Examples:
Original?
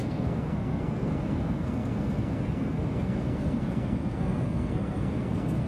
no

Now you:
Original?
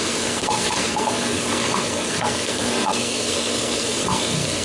no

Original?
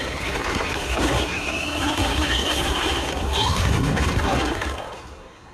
no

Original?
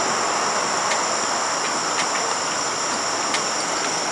yes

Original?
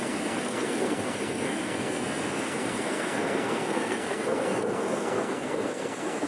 no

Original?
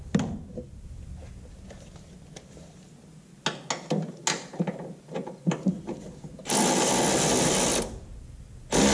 yes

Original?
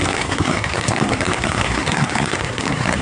no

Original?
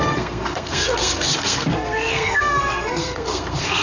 no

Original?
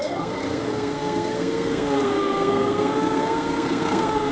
no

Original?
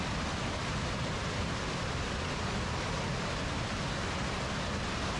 yes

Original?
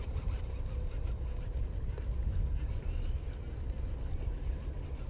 yes